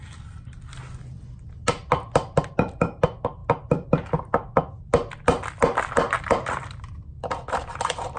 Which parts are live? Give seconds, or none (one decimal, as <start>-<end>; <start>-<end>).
0.0-8.2